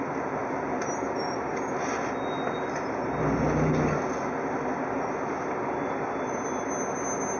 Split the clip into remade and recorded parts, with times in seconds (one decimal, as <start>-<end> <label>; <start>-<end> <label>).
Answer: 0.0-7.4 recorded